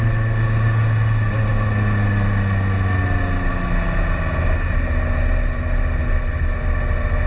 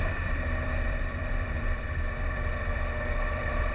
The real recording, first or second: first